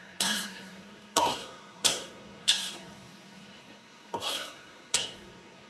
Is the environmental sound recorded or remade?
remade